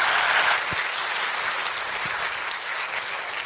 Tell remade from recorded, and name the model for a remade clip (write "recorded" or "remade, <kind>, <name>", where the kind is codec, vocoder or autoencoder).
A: recorded